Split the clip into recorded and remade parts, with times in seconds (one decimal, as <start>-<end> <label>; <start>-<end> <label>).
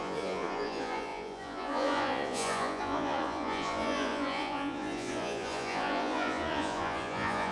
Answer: 0.0-7.5 remade